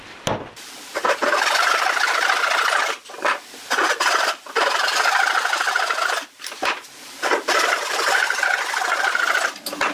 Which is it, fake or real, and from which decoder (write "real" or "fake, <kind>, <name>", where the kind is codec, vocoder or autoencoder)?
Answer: real